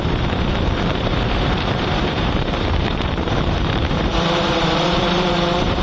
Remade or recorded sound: remade